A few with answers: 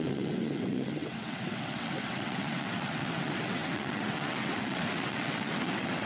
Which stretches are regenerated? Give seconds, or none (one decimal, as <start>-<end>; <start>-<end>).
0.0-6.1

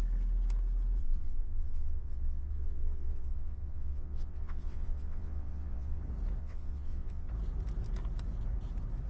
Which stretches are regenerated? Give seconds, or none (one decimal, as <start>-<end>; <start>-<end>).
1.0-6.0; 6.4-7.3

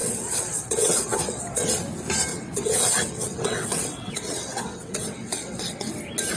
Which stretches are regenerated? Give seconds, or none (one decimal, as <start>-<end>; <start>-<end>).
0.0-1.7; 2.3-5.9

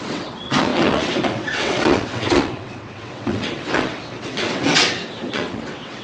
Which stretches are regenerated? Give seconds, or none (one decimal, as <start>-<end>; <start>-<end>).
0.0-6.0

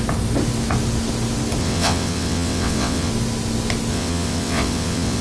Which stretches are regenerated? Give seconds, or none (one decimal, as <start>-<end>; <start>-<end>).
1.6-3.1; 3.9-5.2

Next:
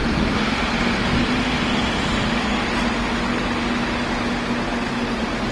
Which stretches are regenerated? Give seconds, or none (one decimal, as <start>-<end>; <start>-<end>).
none